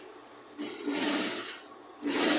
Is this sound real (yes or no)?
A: yes